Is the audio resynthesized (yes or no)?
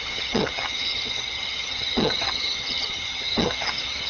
yes